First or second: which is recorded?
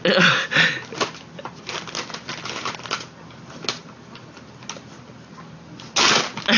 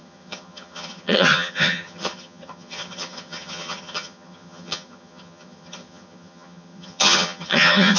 first